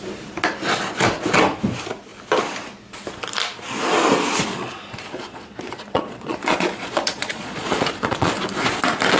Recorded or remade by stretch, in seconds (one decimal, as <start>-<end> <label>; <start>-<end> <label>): 0.0-4.5 recorded; 4.5-8.3 remade; 8.3-9.2 recorded